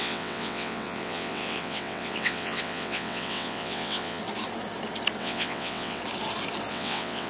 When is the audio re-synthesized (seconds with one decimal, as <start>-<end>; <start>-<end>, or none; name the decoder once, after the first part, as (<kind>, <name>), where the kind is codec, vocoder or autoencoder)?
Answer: 0.0-4.2 (vocoder, WaveNeXt); 5.2-6.0; 6.7-7.3